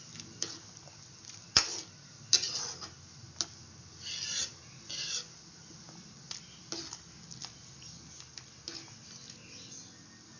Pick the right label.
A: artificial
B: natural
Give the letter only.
B